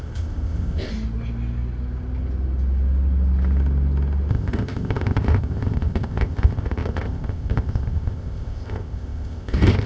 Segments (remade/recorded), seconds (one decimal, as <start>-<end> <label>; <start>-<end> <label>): 0.0-0.9 remade; 0.9-4.3 recorded; 4.3-9.9 remade

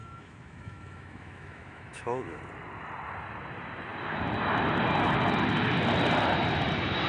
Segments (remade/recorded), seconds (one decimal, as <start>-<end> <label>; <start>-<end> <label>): 0.0-2.4 remade; 2.4-7.1 recorded

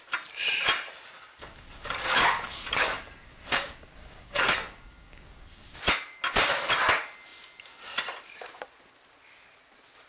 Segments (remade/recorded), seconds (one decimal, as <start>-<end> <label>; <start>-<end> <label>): 0.0-1.4 recorded; 1.4-5.8 remade; 5.8-10.1 recorded

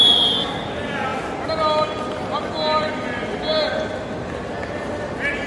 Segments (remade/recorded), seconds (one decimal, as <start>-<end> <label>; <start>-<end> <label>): 0.0-5.5 recorded

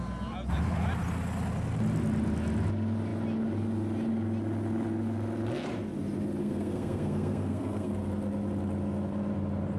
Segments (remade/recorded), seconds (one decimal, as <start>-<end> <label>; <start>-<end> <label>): 0.0-6.4 recorded; 6.4-7.9 remade; 7.9-9.8 recorded

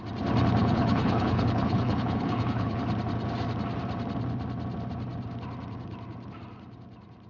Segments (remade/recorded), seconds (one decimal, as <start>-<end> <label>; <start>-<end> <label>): 0.0-0.6 recorded; 0.6-2.8 remade; 2.8-7.3 recorded

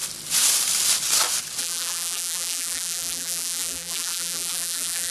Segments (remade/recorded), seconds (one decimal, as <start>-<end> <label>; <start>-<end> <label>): 0.0-1.6 recorded; 1.6-5.1 remade

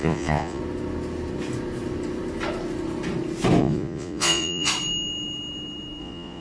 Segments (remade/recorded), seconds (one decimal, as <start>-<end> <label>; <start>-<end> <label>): 0.0-0.6 remade; 0.6-3.6 recorded; 3.6-4.7 remade; 4.7-6.0 recorded; 6.0-6.4 remade